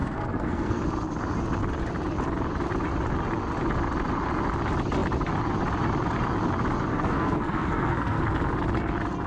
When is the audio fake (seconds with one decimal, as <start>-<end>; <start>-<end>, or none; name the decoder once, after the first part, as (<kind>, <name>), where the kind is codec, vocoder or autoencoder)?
0.0-0.8 (codec, SNAC); 6.9-8.2